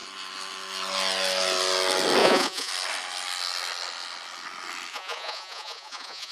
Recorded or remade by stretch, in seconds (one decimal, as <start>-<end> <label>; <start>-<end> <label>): 0.0-2.2 recorded; 2.2-2.7 remade; 2.7-4.9 recorded; 4.9-6.3 remade